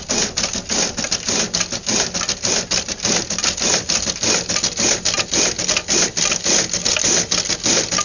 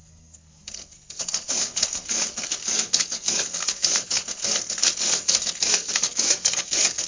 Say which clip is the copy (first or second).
second